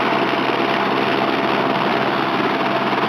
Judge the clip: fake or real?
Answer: real